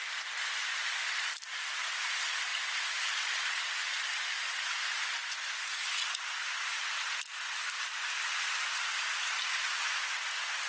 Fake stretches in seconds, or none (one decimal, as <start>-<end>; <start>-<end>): none